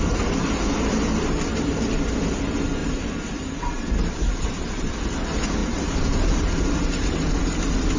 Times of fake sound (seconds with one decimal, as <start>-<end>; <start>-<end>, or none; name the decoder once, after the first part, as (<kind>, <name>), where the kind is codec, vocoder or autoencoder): 2.8-5.0 (vocoder, BigVGAN v2); 5.6-7.3